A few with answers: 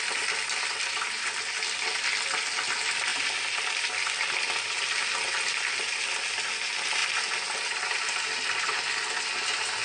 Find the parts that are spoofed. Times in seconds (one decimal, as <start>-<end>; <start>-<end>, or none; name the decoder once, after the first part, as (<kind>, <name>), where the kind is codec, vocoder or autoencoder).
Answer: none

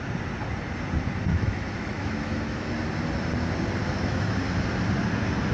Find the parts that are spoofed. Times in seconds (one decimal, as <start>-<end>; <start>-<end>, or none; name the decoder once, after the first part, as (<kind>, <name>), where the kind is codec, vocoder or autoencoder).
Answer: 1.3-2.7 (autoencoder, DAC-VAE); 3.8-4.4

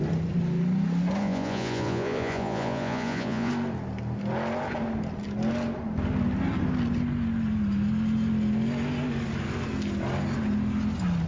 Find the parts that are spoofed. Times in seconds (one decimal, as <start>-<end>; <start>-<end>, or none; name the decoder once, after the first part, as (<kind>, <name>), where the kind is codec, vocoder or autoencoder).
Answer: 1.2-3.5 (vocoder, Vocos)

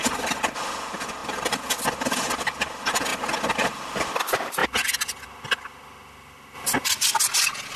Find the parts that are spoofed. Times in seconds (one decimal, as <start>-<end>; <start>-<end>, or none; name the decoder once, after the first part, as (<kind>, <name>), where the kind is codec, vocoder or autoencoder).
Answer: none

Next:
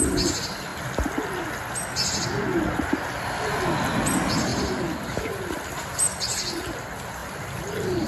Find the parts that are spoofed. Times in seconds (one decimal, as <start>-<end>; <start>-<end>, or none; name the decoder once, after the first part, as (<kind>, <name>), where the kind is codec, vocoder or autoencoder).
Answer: 4.5-6.7 (vocoder, BigVGAN v2); 7.2-8.1

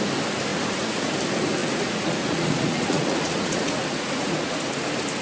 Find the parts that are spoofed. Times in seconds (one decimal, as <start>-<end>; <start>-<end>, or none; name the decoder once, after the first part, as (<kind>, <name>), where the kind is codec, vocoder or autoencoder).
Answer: 0.5-1.1 (vocoder, Vocos); 1.6-4.7

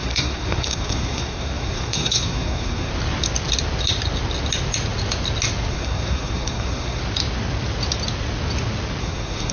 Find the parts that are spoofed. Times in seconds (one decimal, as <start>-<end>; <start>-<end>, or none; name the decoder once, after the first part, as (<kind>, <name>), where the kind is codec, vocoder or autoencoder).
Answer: 0.0-2.9 (codec, SNAC); 5.7-7.0; 9.0-9.5

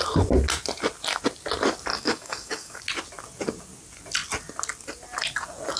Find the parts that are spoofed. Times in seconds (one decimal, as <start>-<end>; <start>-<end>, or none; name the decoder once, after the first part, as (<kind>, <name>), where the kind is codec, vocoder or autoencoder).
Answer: 1.9-2.8 (codec, DAC)